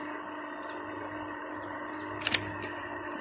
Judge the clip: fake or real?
real